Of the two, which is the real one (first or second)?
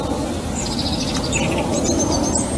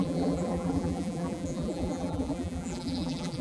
first